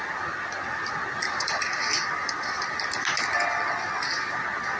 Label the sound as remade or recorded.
recorded